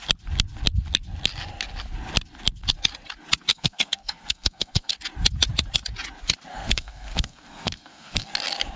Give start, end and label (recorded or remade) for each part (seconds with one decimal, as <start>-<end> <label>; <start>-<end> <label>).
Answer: 0.0-3.5 recorded; 3.5-4.9 remade; 4.9-6.5 recorded; 6.5-8.3 remade; 8.3-8.8 recorded